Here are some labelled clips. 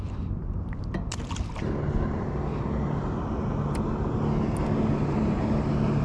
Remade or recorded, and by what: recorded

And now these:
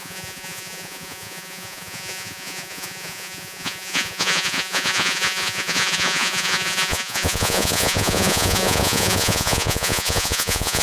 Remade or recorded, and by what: remade, vocoder, Vocos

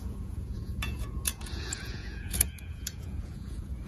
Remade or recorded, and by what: remade, vocoder, Vocos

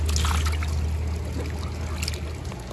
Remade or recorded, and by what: recorded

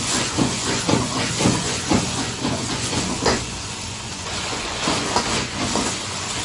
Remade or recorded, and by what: remade, vocoder, Vocos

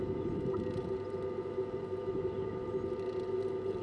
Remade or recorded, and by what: recorded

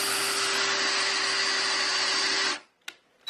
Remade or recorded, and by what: recorded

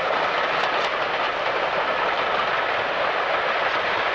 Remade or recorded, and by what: recorded